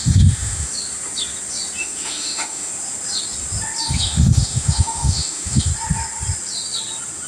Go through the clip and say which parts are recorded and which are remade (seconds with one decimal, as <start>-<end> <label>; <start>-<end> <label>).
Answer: 0.0-0.7 remade; 0.7-1.8 recorded; 1.8-2.7 remade; 2.7-3.8 recorded; 3.8-5.7 remade; 5.7-7.3 recorded